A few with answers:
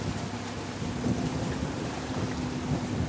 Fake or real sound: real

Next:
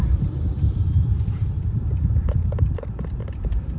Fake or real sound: fake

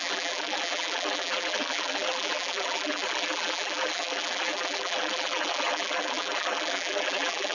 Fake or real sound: fake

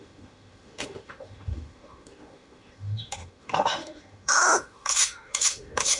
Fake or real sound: fake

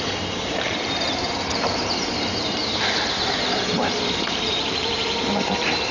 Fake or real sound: fake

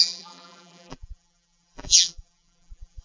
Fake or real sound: fake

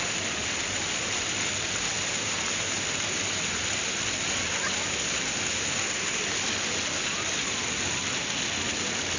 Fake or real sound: real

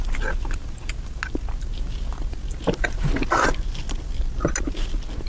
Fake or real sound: real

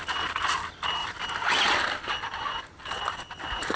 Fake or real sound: real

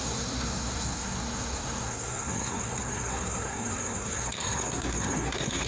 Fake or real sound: fake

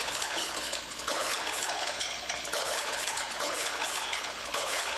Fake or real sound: fake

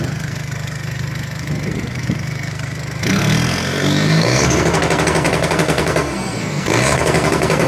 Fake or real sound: fake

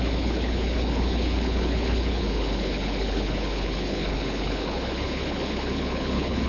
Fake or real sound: fake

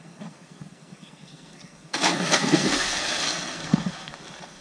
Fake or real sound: fake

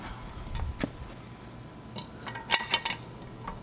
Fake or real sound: real